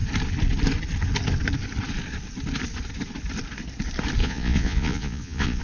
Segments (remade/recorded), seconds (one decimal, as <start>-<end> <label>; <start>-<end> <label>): 0.0-4.2 recorded; 4.2-5.6 remade